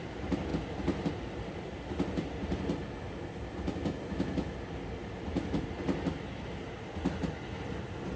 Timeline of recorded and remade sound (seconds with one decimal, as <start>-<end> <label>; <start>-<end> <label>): 0.0-8.2 recorded